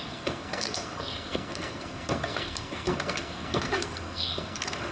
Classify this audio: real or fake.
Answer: fake